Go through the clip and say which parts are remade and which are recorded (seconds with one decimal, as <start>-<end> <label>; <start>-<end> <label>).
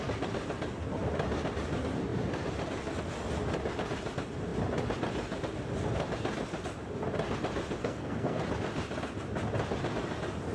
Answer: 0.0-7.8 recorded; 7.8-8.4 remade; 8.4-10.5 recorded